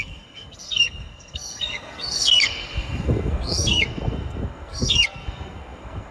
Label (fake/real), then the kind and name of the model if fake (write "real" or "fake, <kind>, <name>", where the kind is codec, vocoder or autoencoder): fake, codec, SNAC